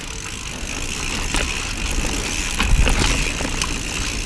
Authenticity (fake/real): real